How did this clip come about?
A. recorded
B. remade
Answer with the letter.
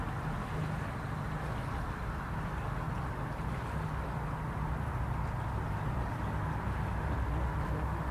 A